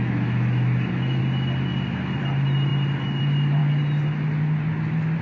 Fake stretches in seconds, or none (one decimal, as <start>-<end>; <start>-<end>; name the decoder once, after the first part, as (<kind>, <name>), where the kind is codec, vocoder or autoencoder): 0.0-1.2 (autoencoder, DAC-VAE)